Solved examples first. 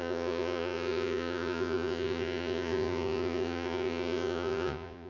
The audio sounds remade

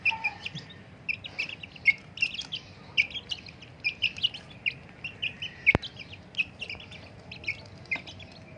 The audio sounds recorded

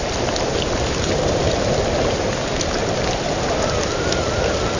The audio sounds recorded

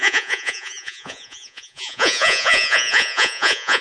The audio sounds remade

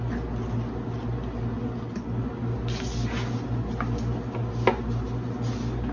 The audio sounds recorded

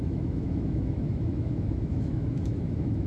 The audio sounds remade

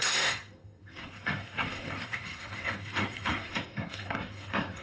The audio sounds remade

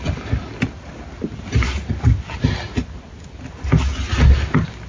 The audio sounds recorded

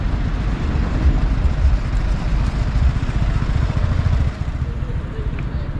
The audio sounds recorded